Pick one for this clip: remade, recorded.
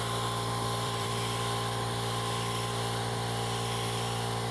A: remade